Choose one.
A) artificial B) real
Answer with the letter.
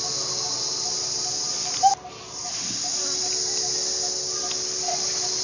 B